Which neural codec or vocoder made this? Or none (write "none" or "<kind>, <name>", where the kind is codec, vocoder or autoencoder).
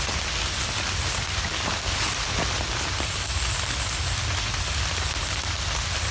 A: none